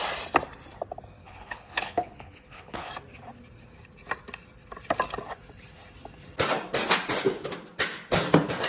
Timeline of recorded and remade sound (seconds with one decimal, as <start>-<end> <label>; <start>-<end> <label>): 0.0-1.2 recorded; 1.2-2.9 remade; 2.9-8.7 recorded